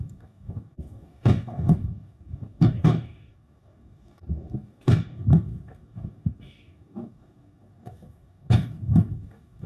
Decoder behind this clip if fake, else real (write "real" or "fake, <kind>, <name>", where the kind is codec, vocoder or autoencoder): fake, codec, DAC